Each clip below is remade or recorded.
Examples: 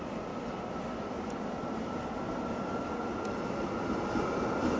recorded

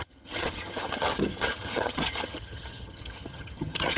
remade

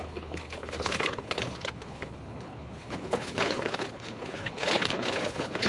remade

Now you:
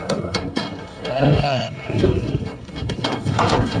remade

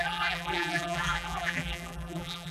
remade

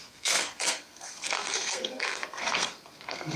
remade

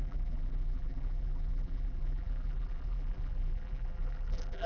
remade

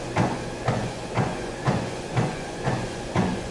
remade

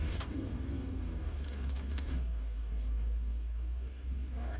remade